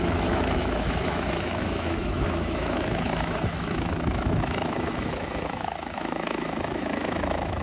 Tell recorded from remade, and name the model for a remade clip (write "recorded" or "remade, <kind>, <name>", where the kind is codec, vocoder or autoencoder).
remade, autoencoder, DAC-VAE